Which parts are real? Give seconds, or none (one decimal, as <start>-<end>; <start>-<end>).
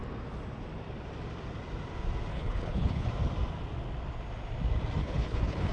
0.0-2.3; 3.1-5.0